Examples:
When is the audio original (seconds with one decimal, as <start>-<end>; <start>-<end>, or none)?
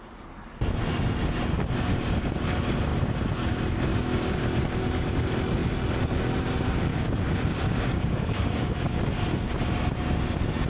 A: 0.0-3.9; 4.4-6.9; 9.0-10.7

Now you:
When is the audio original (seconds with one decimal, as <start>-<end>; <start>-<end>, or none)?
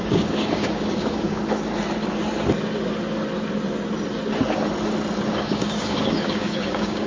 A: 1.4-5.3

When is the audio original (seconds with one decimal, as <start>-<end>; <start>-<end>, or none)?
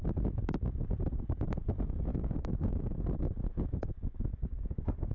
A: 0.0-2.1; 3.0-4.3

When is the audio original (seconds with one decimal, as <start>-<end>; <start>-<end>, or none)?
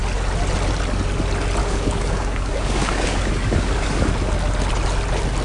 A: 0.0-1.6; 4.1-5.4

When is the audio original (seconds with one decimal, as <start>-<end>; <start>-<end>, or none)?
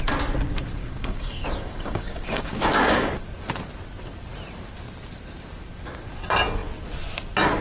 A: 0.0-0.8; 3.1-7.6